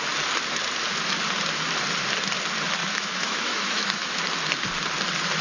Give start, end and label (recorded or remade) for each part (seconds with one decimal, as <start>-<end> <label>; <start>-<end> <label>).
0.0-2.8 recorded; 2.8-4.2 remade; 4.2-5.4 recorded